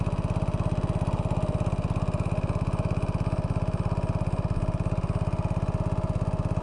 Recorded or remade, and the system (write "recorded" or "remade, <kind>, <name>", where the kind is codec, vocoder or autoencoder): recorded